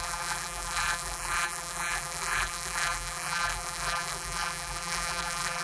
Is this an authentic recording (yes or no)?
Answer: no